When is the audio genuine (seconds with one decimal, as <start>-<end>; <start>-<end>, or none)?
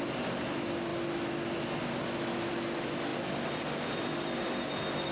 0.0-3.1; 4.4-5.1